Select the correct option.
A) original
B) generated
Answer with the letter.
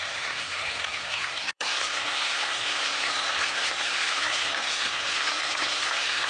B